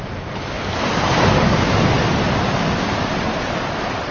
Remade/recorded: remade